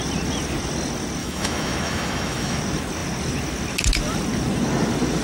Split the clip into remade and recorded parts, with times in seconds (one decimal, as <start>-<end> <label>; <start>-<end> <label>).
0.0-1.2 recorded; 1.2-2.6 remade; 2.6-5.2 recorded